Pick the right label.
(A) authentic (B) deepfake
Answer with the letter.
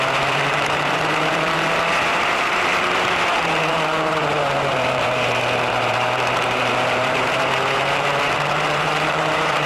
B